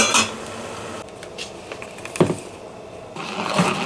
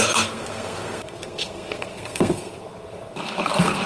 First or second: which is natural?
first